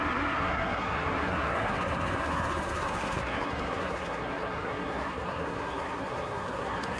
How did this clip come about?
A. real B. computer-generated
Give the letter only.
B